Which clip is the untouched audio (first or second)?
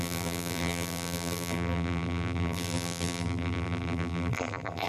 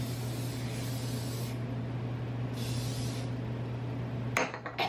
second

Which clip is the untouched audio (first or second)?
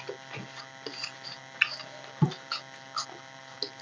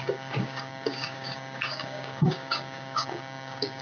first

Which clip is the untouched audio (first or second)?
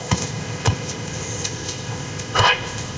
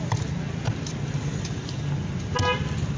second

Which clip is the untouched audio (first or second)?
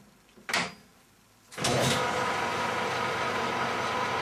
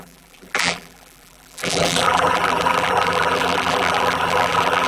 first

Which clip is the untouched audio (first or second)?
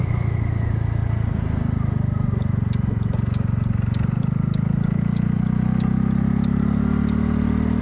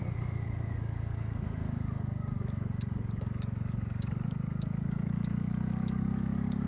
first